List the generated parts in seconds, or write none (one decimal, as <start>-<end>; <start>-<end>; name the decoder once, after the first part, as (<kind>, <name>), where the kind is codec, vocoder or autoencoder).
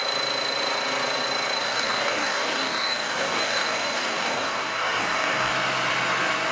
1.6-5.5 (codec, DAC)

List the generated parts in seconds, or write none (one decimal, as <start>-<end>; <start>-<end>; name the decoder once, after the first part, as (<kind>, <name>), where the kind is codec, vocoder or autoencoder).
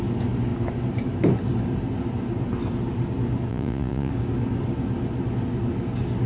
3.5-4.1 (vocoder, Vocos)